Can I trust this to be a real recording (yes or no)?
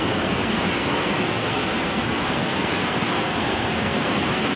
no